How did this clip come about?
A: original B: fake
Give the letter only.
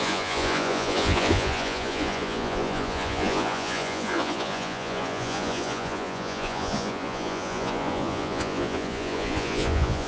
B